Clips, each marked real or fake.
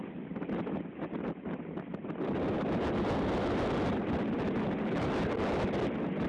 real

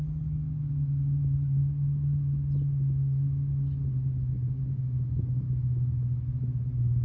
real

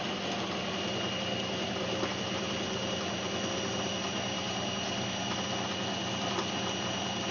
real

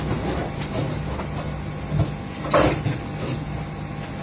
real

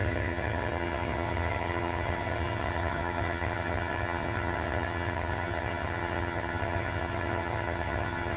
fake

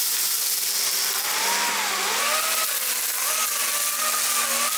real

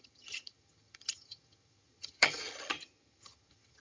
fake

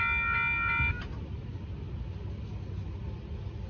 real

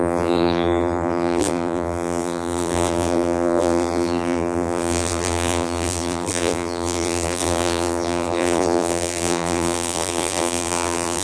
fake